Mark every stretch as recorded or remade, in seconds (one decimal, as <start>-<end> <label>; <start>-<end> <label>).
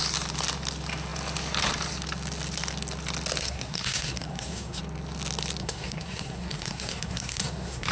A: 0.0-3.4 recorded; 3.4-4.8 remade; 4.8-5.6 recorded; 5.6-7.9 remade